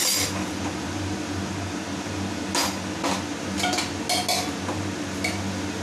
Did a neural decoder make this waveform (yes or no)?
no